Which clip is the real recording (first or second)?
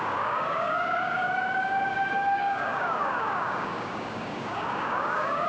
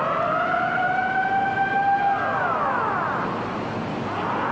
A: second